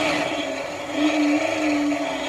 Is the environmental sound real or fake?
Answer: fake